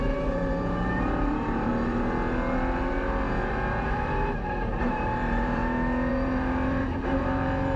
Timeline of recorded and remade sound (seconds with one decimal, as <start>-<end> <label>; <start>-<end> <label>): 0.0-1.7 remade; 1.7-2.8 recorded; 2.8-5.6 remade; 5.6-6.1 recorded; 6.1-7.8 remade